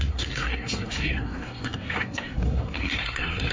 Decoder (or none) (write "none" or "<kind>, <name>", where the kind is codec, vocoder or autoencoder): codec, SNAC